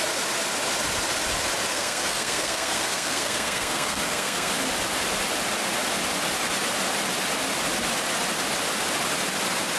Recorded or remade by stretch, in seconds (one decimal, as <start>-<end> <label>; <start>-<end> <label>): 0.0-1.7 recorded; 1.7-4.5 remade; 4.5-9.8 recorded